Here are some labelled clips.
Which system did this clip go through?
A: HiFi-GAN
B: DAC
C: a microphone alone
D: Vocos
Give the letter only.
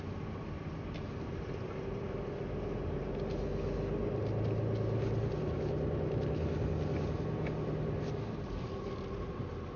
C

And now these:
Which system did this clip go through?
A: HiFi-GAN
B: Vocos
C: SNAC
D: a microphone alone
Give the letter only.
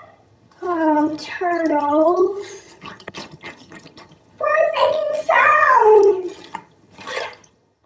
A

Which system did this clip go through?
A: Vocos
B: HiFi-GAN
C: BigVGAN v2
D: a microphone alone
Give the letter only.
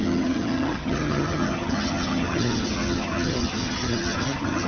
B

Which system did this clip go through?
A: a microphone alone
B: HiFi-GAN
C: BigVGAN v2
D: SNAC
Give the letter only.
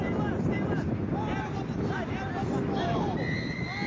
A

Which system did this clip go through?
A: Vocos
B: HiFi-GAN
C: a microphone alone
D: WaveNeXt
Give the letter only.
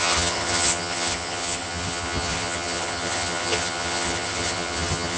B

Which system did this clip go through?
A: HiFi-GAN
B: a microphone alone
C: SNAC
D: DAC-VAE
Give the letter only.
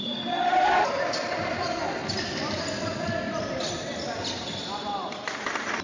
B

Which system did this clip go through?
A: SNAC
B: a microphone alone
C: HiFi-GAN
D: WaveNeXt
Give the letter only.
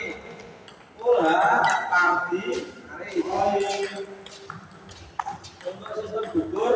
B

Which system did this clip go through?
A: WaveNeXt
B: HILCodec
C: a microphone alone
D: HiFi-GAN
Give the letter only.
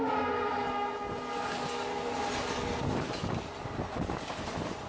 C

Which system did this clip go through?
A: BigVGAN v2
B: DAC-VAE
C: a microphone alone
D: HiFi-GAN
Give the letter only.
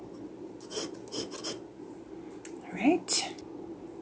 C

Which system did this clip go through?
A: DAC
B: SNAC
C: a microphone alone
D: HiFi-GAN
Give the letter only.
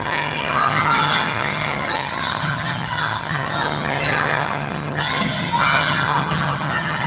D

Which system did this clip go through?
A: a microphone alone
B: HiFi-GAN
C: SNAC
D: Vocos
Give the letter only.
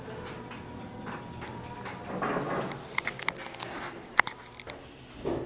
A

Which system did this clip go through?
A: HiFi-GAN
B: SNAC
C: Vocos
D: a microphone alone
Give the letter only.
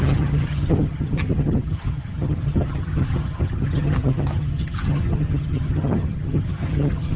A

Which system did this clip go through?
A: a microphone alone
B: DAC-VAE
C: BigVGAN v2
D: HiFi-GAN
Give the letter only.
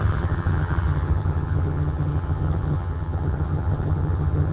D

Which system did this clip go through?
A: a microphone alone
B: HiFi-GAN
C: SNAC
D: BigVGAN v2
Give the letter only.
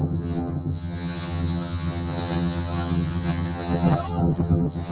B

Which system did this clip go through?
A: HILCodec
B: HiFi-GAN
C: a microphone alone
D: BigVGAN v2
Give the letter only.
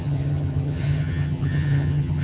B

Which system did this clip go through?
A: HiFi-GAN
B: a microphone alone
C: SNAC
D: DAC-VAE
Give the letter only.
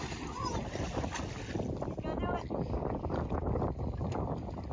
B